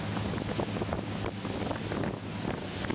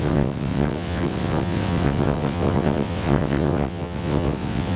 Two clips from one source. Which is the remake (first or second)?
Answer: second